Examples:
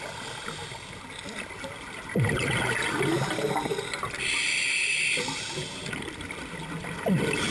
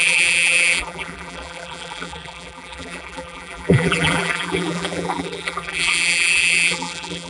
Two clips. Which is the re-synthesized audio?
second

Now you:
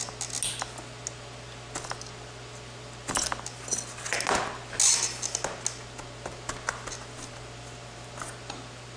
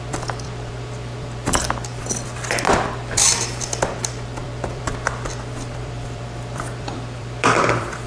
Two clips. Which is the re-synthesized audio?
second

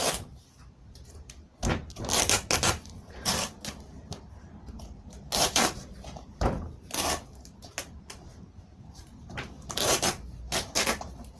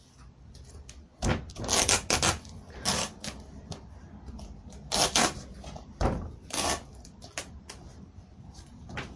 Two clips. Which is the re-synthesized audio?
first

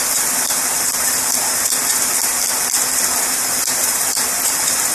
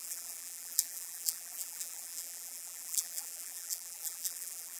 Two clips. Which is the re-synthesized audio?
second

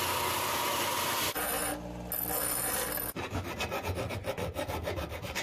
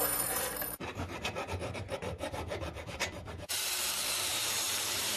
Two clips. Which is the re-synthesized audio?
second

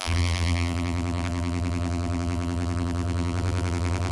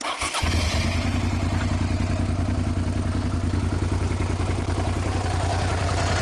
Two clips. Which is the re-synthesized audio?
first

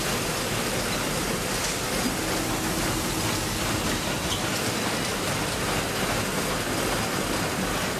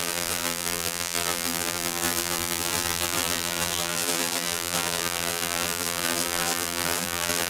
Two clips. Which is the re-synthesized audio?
second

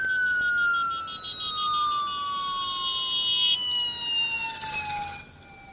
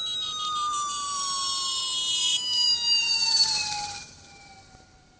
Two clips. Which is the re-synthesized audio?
second